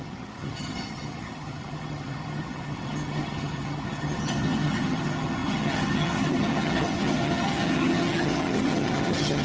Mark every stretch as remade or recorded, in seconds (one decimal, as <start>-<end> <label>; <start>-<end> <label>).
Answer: 0.0-9.4 remade